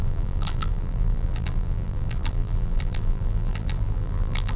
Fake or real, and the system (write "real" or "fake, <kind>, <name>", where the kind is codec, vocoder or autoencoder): fake, vocoder, BigVGAN v2